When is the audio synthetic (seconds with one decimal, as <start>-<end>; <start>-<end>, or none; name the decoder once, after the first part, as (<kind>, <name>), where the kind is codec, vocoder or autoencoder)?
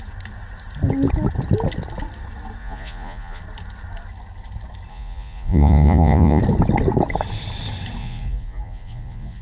2.6-3.4 (vocoder, Vocos); 4.9-6.4; 8.0-9.4